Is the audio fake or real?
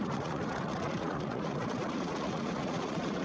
fake